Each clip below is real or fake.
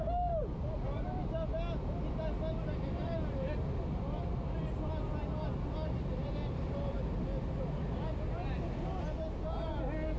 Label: real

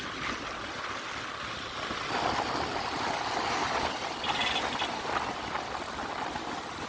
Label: real